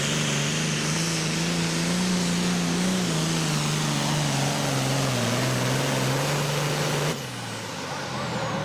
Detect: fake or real real